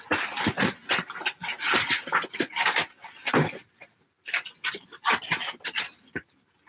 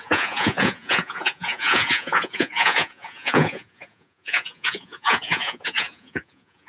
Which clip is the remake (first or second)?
second